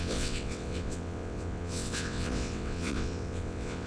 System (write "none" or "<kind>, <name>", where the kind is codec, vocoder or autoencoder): vocoder, WaveNeXt